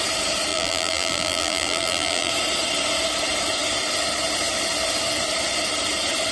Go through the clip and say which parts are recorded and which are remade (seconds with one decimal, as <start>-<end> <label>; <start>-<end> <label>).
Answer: 0.0-0.5 recorded; 0.5-2.3 remade; 2.3-6.3 recorded